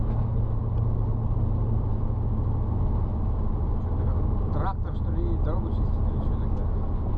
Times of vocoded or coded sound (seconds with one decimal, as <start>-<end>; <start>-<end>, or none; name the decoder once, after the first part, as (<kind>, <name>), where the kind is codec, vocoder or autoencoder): none